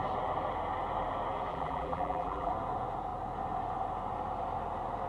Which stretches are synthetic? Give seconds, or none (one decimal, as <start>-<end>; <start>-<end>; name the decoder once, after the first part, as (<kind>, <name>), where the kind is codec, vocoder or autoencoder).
1.5-2.5 (vocoder, BigVGAN v2)